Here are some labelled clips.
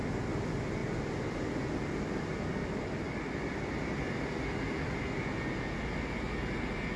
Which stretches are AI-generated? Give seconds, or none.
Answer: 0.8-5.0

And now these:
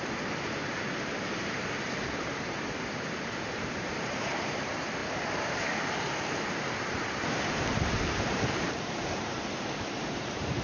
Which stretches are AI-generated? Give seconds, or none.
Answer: 0.0-10.6

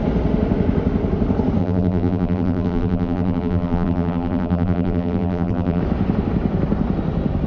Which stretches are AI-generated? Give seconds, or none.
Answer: 1.6-5.8